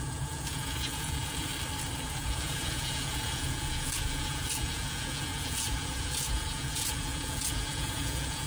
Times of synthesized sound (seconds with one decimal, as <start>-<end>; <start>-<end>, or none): 0.0-1.5; 2.1-8.5